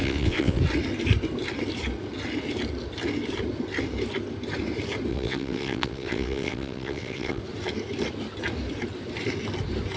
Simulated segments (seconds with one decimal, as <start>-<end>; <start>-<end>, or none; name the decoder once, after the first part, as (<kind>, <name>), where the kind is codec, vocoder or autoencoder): 0.0-0.6 (vocoder, WaveNeXt); 5.1-7.4